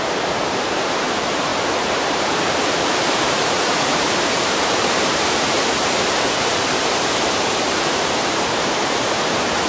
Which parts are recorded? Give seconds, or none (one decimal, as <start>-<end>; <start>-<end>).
1.5-2.1